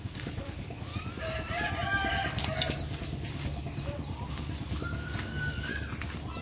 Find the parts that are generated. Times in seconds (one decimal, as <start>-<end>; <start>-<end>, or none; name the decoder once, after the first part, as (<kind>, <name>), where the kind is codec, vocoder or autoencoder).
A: 0.0-0.9 (codec, DAC); 4.3-5.7

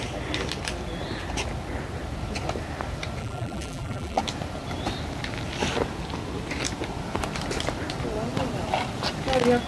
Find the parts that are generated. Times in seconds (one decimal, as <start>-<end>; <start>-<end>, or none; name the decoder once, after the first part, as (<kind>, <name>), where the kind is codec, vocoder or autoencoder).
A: 3.2-4.2 (vocoder, BigVGAN v2)

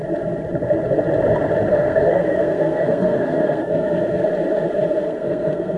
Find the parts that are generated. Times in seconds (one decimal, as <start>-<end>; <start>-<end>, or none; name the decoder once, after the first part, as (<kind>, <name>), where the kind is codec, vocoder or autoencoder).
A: 1.7-4.2 (codec, SNAC); 5.0-5.8

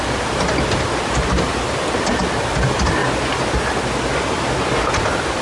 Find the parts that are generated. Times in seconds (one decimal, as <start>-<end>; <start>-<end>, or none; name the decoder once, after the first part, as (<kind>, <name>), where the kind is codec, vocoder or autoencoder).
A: 0.0-3.0 (vocoder, BigVGAN v2); 3.7-5.4